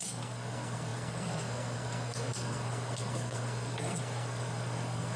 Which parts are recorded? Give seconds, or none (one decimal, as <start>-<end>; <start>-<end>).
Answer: none